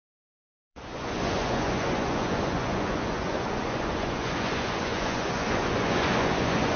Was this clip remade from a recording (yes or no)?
yes